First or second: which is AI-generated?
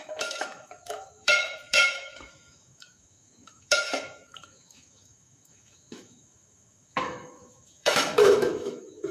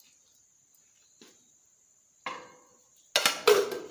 first